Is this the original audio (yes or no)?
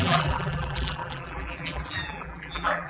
no